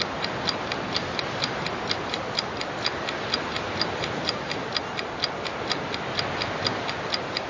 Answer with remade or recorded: recorded